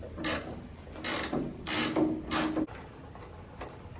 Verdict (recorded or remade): recorded